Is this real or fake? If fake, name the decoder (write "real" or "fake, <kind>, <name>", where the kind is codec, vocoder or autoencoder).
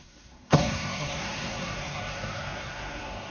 fake, codec, SNAC